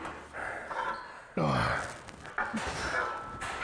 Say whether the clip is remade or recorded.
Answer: recorded